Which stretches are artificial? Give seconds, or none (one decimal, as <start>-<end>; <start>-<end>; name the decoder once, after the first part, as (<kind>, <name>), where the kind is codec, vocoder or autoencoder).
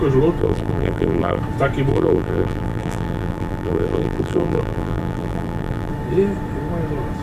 0.4-1.4 (vocoder, BigVGAN v2); 1.9-5.9